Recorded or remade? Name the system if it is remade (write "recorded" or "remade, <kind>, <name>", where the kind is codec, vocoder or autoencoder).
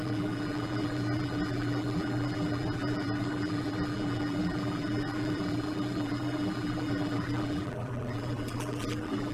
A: remade, vocoder, BigVGAN v2